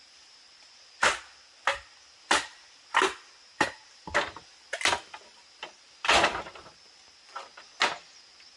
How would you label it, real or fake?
real